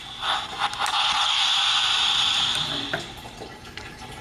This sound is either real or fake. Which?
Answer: real